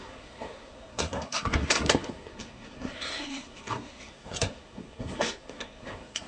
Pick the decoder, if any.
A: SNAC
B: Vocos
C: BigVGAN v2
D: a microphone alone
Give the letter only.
A